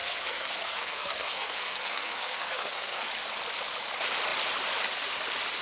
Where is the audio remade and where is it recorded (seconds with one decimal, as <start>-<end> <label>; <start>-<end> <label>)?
0.0-3.1 remade; 3.1-5.6 recorded